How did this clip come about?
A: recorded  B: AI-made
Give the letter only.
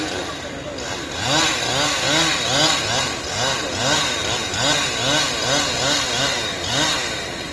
A